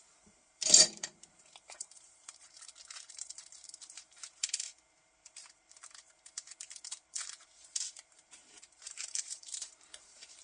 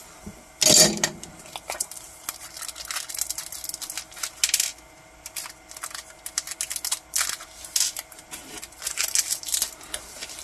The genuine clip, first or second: second